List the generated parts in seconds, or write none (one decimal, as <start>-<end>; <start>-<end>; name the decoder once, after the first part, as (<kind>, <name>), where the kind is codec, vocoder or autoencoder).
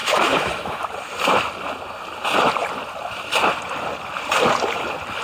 0.0-0.8 (autoencoder, DAC-VAE)